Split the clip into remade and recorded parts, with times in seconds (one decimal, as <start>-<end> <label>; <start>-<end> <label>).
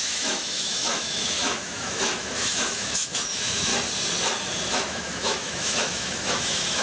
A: 0.0-3.7 remade; 3.7-4.7 recorded; 4.7-6.8 remade